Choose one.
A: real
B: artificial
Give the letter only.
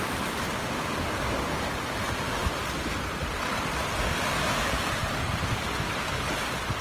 A